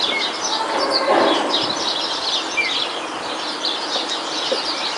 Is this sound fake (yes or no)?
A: no